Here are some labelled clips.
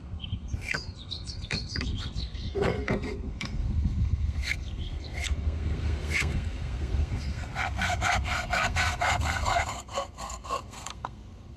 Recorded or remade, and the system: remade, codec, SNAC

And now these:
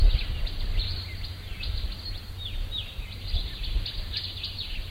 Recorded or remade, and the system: recorded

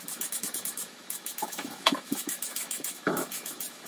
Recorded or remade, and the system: remade, autoencoder, DAC-VAE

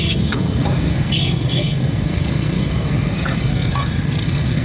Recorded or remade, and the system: remade, codec, SNAC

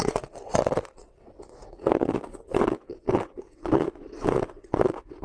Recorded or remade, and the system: remade, vocoder, WaveNeXt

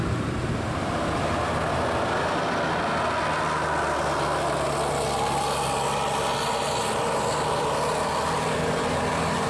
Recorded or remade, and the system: recorded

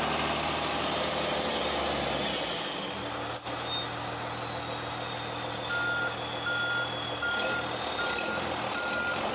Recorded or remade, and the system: recorded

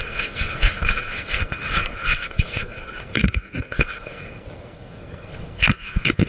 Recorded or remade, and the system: remade, codec, SNAC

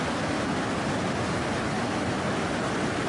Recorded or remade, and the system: recorded